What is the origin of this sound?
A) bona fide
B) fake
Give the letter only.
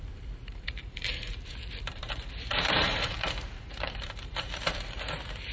B